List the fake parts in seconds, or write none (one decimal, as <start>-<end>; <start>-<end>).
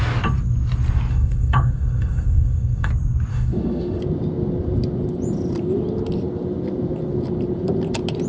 1.1-2.9; 3.3-4.0